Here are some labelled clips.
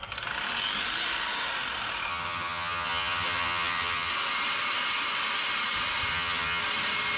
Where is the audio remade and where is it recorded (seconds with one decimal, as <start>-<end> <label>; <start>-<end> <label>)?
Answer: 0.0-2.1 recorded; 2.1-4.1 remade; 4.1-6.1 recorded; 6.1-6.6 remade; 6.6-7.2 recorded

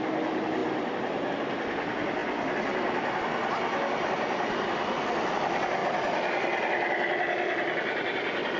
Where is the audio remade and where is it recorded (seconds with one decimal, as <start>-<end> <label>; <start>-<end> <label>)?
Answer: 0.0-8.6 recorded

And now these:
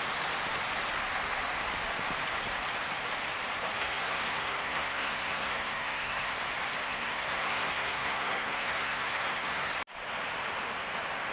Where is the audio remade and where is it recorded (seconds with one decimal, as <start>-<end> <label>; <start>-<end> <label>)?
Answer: 0.0-3.8 recorded; 3.8-6.3 remade; 6.3-6.8 recorded; 6.8-9.7 remade; 9.7-11.3 recorded

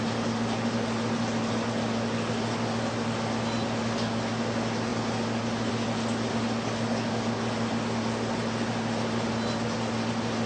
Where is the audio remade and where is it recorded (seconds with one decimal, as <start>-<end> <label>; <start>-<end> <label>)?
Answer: 0.0-10.5 recorded

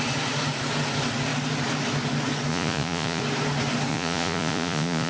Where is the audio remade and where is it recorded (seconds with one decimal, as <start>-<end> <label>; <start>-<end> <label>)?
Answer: 0.0-2.5 recorded; 2.5-3.2 remade; 3.2-3.9 recorded; 3.9-5.1 remade

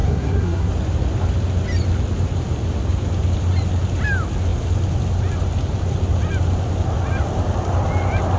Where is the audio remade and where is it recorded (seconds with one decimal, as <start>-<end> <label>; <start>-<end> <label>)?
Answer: 0.0-0.7 remade; 0.7-8.4 recorded

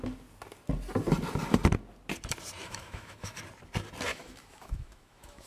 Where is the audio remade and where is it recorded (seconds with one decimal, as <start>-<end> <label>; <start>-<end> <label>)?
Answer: 0.0-2.6 recorded; 2.6-3.4 remade; 3.4-4.1 recorded; 4.1-5.5 remade